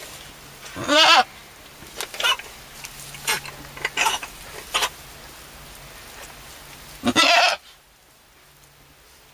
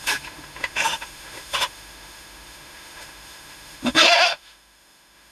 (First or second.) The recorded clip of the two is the first